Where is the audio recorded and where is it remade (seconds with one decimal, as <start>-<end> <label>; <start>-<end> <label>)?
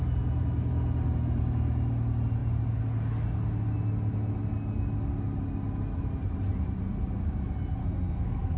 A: 0.0-7.8 recorded; 7.8-8.6 remade